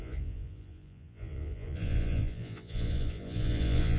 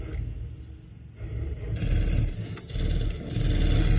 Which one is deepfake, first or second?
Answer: first